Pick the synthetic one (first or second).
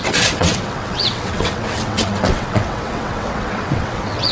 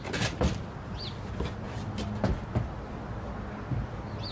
first